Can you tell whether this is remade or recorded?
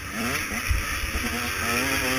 recorded